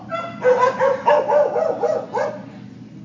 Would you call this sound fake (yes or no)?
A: no